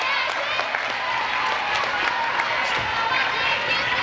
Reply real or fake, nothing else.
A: real